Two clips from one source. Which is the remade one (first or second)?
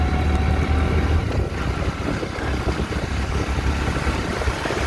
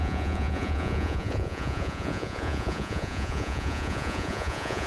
second